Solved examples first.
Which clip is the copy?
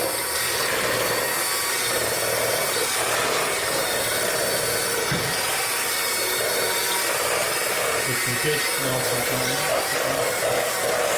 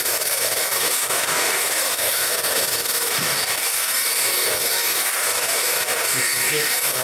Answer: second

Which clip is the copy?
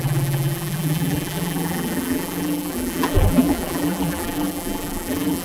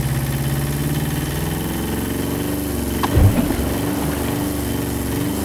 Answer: first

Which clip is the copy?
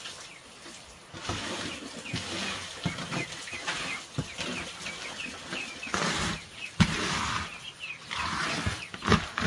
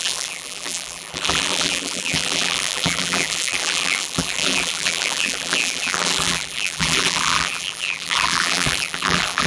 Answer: second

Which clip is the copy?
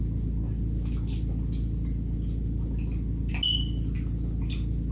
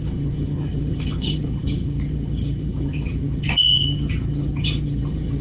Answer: second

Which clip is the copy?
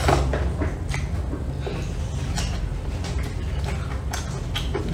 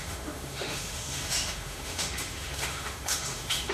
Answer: second